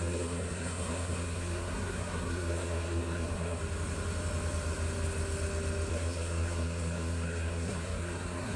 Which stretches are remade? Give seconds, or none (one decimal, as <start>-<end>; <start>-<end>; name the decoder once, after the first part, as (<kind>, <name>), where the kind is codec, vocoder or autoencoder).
0.0-3.6 (codec, SNAC); 5.9-8.6